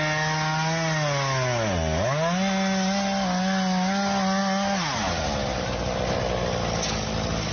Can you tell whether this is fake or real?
real